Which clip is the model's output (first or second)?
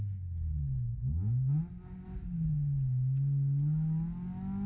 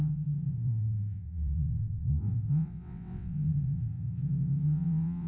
second